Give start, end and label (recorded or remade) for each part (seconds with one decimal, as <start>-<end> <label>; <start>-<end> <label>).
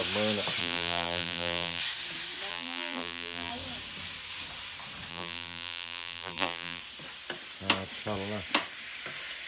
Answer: 0.0-0.6 recorded; 0.6-1.8 remade; 1.8-2.5 recorded; 2.5-3.5 remade; 3.5-5.1 recorded; 5.1-6.8 remade; 6.8-9.5 recorded